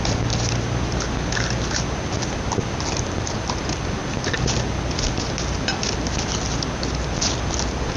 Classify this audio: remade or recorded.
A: recorded